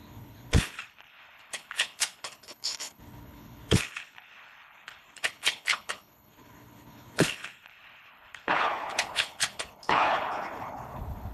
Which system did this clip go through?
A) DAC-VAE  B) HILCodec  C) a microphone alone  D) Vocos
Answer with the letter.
B